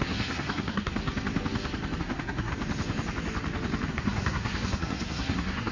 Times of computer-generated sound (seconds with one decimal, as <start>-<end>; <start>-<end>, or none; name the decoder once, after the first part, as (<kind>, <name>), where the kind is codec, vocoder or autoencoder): 0.0-1.0 (codec, SNAC); 2.0-2.5; 3.9-5.7